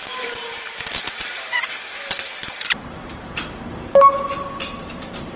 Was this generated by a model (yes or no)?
yes